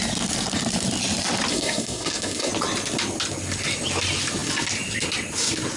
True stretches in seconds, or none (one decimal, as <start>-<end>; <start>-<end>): 0.0-1.5; 2.5-5.8